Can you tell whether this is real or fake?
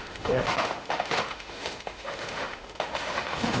fake